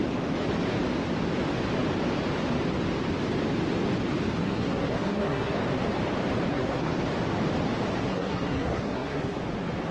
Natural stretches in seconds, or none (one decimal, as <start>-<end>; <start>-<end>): 0.0-4.4; 5.6-6.5; 7.0-8.0; 9.4-9.9